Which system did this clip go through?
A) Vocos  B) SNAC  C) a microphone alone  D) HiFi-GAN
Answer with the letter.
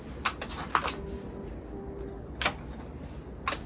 C